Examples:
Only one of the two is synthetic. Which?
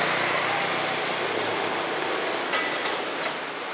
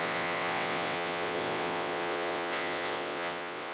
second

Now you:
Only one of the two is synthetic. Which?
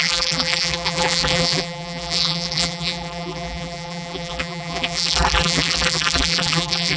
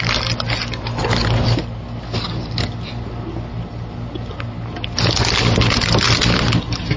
first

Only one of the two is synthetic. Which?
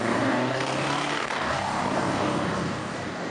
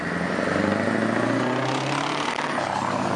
first